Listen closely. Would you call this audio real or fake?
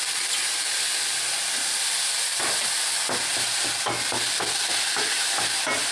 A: real